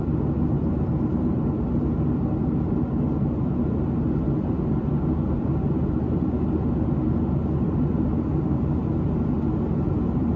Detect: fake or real real